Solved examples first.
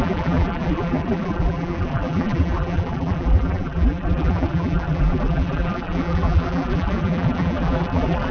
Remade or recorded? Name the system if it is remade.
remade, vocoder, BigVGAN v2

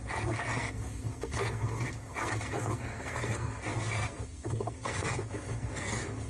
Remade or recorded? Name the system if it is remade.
remade, codec, SNAC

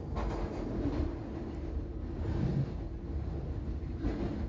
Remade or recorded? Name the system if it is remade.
recorded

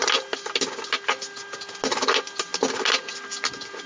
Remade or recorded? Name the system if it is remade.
recorded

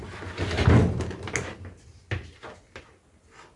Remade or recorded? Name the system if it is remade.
recorded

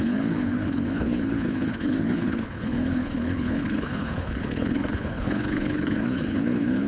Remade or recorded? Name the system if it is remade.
remade, codec, HILCodec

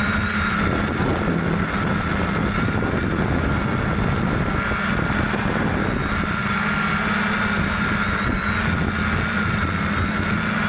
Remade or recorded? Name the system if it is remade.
recorded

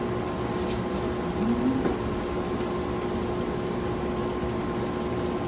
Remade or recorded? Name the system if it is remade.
recorded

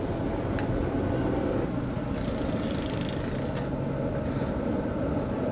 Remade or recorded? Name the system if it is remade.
recorded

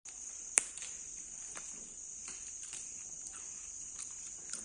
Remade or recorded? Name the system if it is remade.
recorded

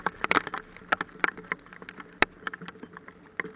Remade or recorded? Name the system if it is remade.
recorded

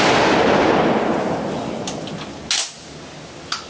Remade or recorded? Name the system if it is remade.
recorded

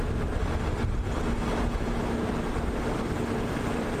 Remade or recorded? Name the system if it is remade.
recorded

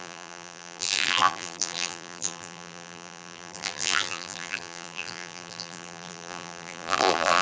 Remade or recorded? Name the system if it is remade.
remade, vocoder, BigVGAN v2